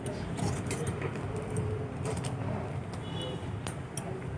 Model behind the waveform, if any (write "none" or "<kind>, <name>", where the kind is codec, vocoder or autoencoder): none